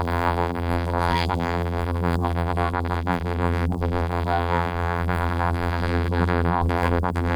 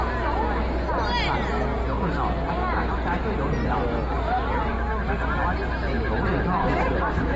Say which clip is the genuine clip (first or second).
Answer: second